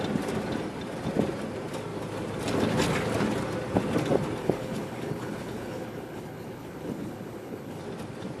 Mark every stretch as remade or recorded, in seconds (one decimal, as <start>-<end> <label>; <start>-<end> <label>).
0.0-4.4 recorded; 4.4-7.8 remade; 7.8-8.4 recorded